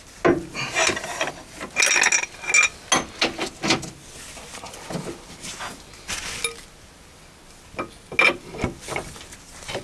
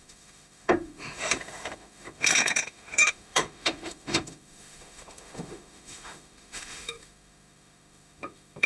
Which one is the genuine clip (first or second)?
first